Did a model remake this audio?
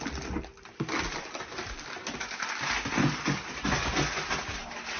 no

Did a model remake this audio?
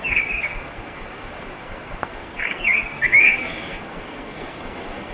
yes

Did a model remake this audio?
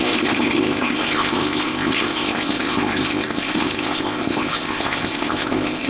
yes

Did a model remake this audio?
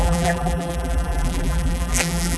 yes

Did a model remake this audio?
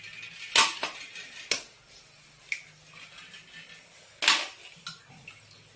no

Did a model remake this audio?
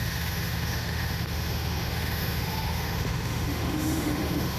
yes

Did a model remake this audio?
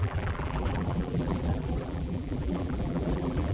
yes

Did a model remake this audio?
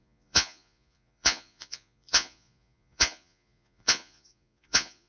yes